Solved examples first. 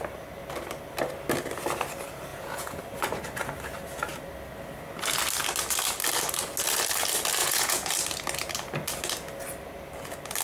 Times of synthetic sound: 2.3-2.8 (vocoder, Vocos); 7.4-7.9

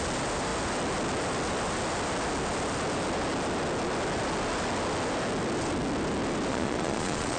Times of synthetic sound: 6.5-7.4 (vocoder, Vocos)

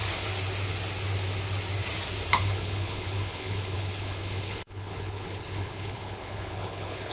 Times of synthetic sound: 2.3-7.1 (codec, HILCodec)